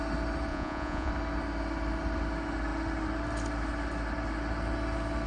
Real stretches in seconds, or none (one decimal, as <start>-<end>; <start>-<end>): 0.0-0.5; 1.1-5.3

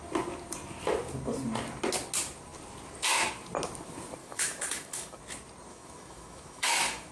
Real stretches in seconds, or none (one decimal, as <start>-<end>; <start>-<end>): 0.0-4.2; 5.2-5.7